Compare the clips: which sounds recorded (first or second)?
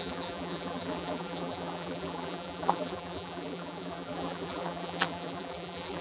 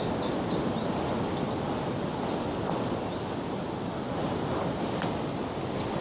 second